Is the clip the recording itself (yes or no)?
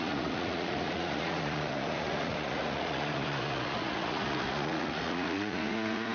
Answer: no